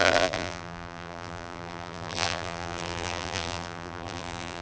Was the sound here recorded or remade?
remade